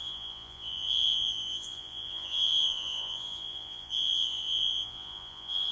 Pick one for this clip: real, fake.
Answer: fake